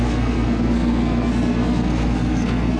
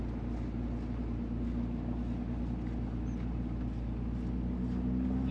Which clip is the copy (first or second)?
first